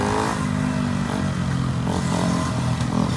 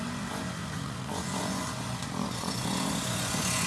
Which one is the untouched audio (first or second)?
first